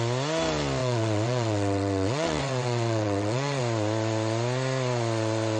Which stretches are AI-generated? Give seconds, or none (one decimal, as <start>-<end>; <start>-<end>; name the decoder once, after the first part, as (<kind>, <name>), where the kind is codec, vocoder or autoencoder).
0.8-3.6 (vocoder, WaveNeXt)